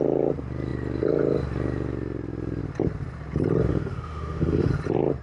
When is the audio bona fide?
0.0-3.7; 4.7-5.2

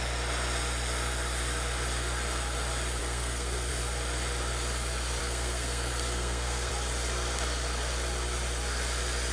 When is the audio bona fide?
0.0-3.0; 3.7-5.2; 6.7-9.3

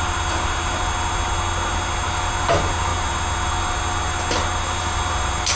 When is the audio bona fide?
0.0-5.6